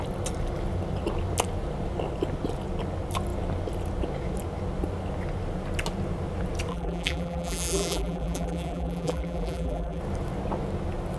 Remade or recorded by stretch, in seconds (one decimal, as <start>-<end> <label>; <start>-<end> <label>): 0.0-6.7 recorded; 6.7-10.0 remade; 10.0-11.2 recorded